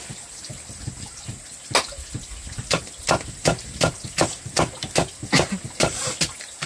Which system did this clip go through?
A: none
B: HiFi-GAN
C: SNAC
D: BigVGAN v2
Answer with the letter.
A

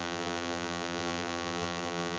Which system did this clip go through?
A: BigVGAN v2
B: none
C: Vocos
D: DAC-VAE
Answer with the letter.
A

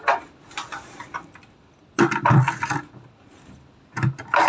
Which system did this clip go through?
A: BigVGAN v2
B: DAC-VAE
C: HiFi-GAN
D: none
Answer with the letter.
A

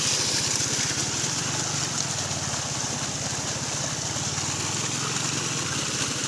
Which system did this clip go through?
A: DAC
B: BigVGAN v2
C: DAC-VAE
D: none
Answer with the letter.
D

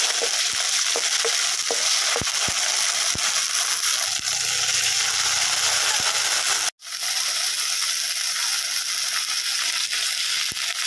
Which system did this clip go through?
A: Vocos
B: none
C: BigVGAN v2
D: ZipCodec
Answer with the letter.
B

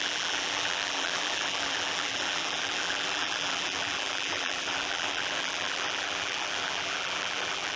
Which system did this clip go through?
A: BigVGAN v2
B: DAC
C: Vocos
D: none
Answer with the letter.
A